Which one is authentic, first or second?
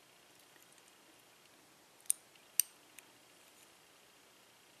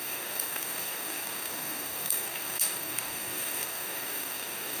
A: first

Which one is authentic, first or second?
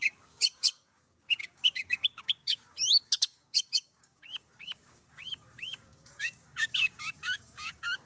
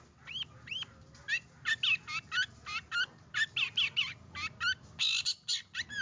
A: second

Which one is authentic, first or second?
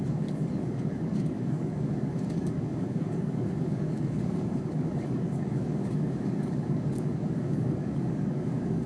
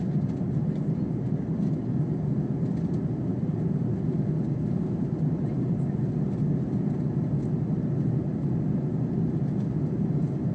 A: second